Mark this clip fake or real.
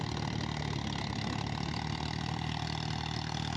real